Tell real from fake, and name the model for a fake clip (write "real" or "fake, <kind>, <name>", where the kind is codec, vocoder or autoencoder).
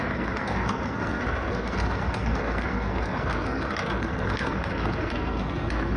fake, codec, SNAC